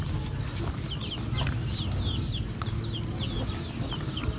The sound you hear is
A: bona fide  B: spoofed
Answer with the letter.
A